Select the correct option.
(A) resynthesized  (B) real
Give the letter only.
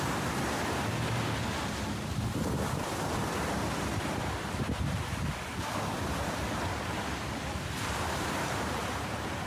B